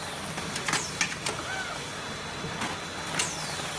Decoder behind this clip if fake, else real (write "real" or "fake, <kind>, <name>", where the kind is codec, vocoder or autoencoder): real